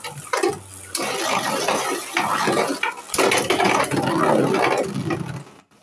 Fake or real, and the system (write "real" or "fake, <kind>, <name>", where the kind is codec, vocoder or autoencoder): real